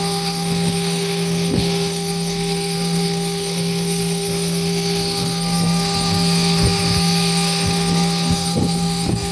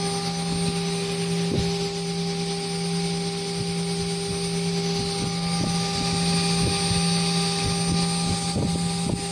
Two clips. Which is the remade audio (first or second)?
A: first